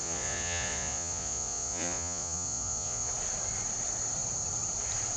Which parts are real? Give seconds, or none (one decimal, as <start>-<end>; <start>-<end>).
3.1-5.2